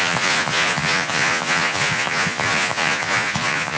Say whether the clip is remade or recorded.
remade